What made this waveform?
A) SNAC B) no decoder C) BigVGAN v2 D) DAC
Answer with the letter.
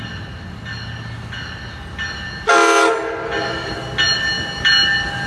B